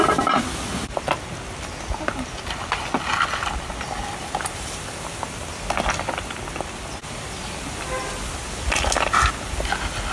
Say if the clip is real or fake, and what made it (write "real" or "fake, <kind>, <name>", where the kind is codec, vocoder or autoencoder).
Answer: real